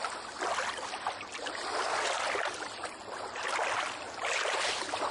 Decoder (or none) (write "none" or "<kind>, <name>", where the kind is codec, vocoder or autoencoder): none